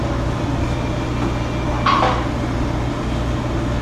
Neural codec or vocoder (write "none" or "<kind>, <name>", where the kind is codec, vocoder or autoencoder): none